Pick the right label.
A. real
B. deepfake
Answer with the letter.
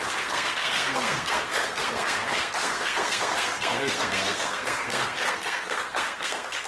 B